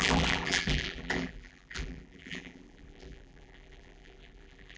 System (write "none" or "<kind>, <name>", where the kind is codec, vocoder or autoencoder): vocoder, BigVGAN v2